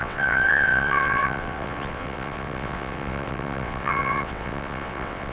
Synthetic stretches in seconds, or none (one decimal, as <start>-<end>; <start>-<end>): 0.0-5.3